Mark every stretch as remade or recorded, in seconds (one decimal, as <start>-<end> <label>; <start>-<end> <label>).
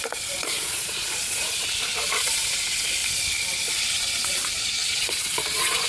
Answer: 0.0-3.0 remade; 3.0-3.7 recorded; 3.7-5.9 remade